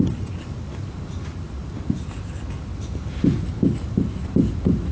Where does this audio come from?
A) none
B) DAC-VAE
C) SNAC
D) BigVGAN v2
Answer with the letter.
A